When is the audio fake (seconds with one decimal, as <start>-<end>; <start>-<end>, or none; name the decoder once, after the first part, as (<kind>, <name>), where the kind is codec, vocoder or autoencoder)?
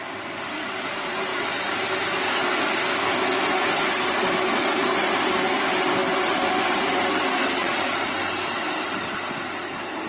7.6-8.1 (vocoder, Vocos)